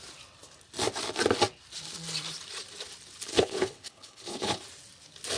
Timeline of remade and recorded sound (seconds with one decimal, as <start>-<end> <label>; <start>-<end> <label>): 0.0-3.3 recorded; 3.3-4.6 remade; 4.6-5.4 recorded